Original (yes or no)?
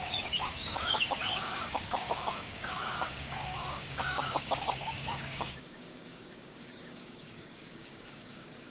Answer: no